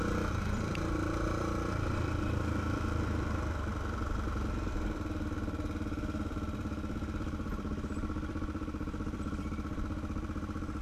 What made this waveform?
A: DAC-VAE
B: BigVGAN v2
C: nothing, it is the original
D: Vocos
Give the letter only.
B